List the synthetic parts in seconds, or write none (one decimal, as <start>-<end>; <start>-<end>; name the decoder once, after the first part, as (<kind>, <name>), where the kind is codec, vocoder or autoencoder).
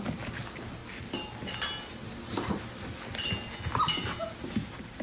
none